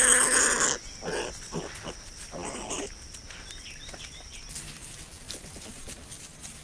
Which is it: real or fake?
real